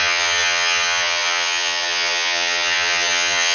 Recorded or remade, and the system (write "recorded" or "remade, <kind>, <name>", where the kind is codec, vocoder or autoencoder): remade, vocoder, HiFi-GAN